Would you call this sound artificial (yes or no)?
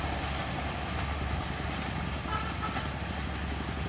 no